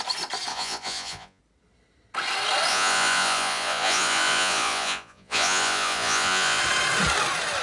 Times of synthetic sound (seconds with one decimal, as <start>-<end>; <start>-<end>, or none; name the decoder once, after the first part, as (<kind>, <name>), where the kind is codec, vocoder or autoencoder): 0.5-1.4 (vocoder, Vocos); 2.7-6.6